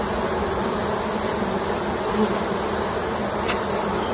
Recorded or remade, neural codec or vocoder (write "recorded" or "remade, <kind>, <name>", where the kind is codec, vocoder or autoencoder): recorded